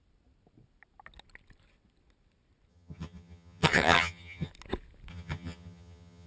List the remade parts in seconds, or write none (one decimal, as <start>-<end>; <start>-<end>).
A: 2.7-4.5; 5.1-6.3